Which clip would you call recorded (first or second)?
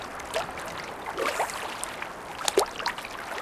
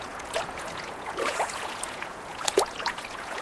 first